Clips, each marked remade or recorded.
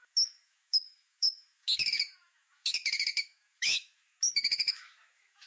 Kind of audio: remade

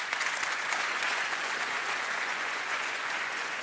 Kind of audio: remade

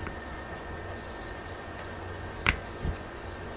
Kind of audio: remade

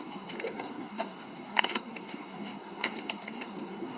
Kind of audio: remade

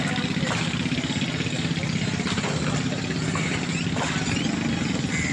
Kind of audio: recorded